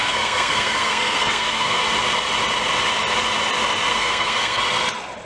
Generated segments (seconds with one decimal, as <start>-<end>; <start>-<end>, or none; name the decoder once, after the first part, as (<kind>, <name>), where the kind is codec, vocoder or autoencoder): 0.0-1.8 (codec, SNAC); 3.9-4.6